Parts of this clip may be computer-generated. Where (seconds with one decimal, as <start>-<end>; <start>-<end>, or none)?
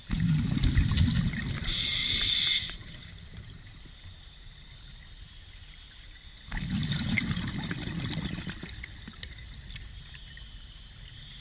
2.0-3.8; 6.8-8.0